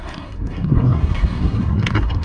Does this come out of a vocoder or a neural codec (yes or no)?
yes